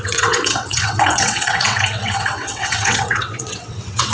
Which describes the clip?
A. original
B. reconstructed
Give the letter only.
B